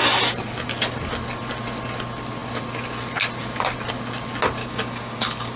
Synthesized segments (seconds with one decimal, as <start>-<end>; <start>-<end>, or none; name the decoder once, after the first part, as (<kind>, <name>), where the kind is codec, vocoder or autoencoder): 4.6-5.6 (codec, DAC)